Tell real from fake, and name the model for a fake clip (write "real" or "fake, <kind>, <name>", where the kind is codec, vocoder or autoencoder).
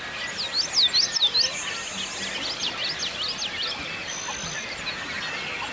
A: real